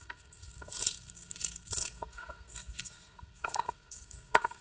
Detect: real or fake fake